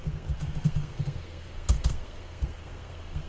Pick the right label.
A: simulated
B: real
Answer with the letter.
A